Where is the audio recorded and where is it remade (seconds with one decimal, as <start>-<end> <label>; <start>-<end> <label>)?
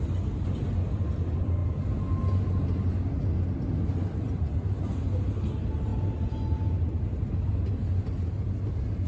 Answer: 0.0-9.1 recorded